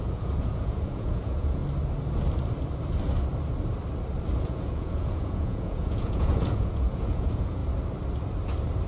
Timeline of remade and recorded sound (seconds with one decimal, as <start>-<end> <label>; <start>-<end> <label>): 0.0-1.6 remade; 1.6-4.4 recorded; 4.4-7.6 remade; 7.6-8.9 recorded